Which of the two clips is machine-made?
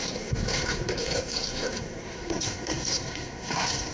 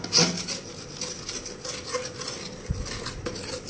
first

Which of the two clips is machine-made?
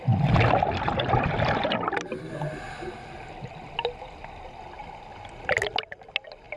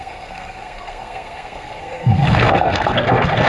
second